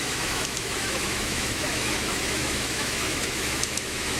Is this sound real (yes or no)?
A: no